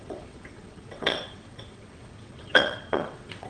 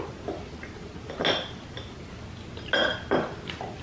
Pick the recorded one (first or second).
second